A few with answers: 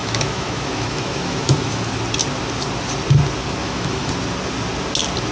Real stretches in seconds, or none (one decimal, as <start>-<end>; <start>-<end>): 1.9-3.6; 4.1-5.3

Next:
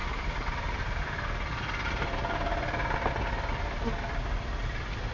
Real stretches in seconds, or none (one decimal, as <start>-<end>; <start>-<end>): 0.0-5.1

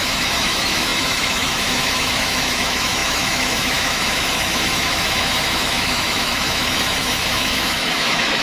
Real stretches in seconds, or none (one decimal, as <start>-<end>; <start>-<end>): none

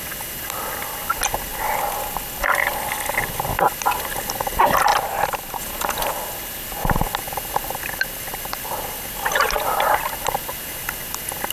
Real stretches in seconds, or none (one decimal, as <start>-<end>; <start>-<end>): 0.0-11.5

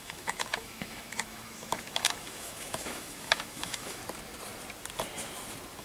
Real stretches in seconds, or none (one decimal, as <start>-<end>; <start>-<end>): 4.0-5.8